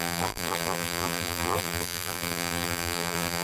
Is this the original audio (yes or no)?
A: no